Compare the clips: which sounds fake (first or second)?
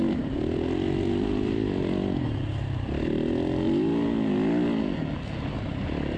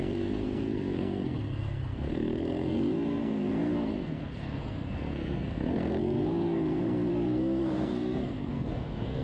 second